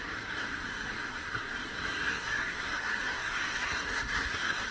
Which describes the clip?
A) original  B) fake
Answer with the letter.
B